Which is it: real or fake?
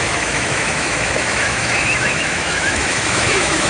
fake